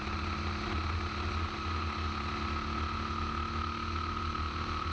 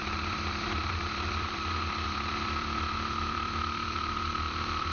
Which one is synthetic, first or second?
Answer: second